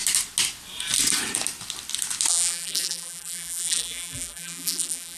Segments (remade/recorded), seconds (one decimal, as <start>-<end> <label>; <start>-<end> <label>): 0.0-2.3 recorded; 2.3-5.2 remade